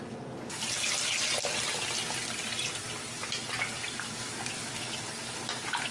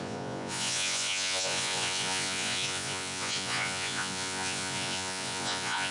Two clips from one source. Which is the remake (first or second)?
second